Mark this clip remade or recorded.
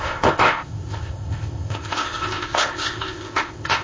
remade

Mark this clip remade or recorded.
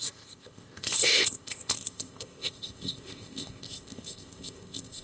remade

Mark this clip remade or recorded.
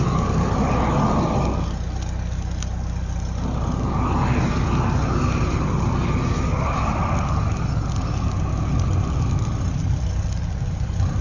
recorded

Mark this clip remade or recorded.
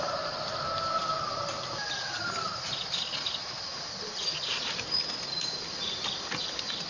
recorded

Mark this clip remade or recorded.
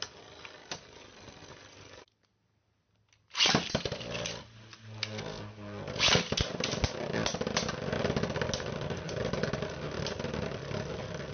recorded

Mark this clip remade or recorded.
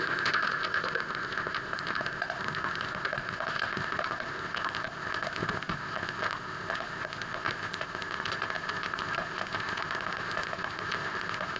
remade